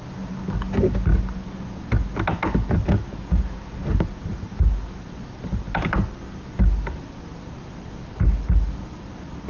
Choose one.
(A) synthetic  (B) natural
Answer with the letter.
B